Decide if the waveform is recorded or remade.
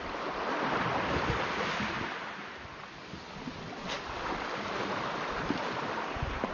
recorded